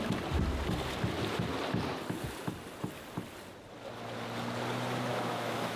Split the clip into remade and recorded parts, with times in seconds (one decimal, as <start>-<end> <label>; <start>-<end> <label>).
0.0-5.1 recorded; 5.1-5.8 remade